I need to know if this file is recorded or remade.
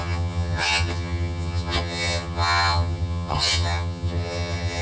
remade